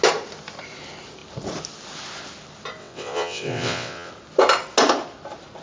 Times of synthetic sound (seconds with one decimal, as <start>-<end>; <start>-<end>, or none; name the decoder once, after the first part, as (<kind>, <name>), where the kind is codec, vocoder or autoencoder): 2.8-4.1 (vocoder, WaveNeXt)